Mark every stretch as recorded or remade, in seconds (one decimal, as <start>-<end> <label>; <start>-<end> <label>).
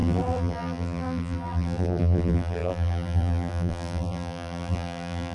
0.0-5.3 remade